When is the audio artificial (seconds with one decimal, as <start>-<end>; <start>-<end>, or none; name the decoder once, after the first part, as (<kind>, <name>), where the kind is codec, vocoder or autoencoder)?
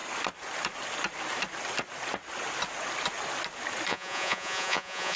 3.9-5.2 (vocoder, Vocos)